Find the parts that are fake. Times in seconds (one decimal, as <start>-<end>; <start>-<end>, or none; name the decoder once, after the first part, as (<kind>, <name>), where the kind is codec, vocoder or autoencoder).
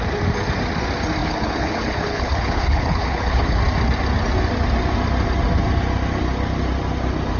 1.2-3.6 (codec, HILCodec)